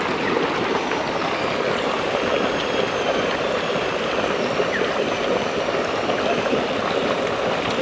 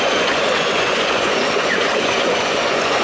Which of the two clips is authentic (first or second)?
first